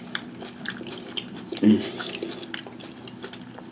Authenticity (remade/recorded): recorded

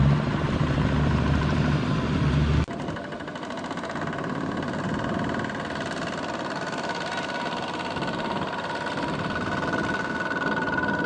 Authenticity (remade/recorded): remade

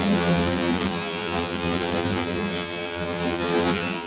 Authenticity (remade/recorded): remade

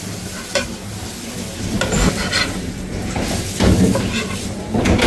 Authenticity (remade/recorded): recorded